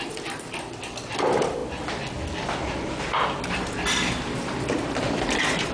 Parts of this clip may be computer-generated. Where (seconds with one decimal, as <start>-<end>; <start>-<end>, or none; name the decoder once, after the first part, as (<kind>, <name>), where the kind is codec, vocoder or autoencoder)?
0.0-1.6 (vocoder, BigVGAN v2); 3.0-5.7